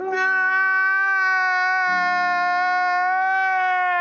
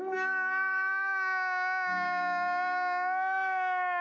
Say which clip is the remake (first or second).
second